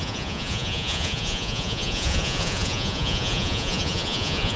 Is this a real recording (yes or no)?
no